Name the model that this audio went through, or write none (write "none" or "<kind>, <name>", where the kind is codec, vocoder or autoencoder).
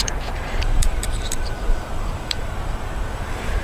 vocoder, BigVGAN v2